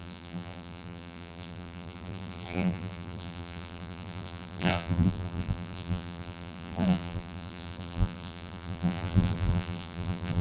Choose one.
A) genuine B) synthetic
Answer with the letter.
B